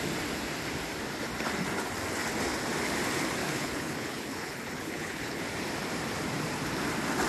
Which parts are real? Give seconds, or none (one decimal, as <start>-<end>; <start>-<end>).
0.0-3.4; 5.4-7.3